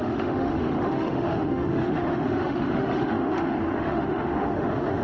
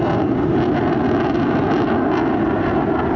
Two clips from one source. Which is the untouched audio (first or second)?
second